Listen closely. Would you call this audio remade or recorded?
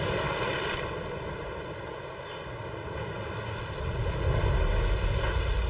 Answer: recorded